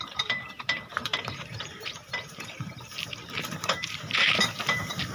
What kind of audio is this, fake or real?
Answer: fake